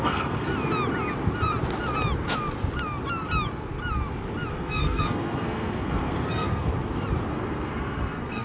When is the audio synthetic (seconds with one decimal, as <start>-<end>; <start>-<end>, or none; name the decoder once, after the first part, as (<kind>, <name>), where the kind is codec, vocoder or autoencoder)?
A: 0.0-0.5 (codec, SNAC); 4.5-6.7; 7.3-8.4